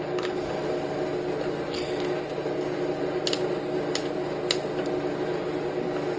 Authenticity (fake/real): real